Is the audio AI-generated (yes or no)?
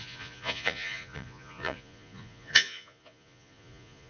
yes